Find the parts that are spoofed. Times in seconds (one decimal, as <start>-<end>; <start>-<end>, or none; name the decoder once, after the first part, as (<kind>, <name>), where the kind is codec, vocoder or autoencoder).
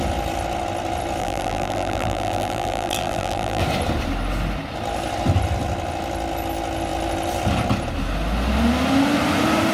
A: 1.2-3.6 (vocoder, BigVGAN v2)